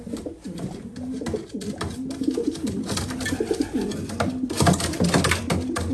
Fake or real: real